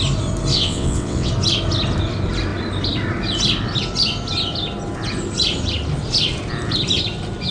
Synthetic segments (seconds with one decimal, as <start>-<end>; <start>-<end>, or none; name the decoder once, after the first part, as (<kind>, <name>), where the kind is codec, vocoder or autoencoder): 0.5-1.3 (vocoder, WaveNeXt)